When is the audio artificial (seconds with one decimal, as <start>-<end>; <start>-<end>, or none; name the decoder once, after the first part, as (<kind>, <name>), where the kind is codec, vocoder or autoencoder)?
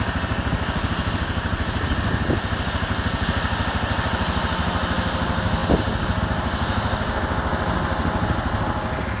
none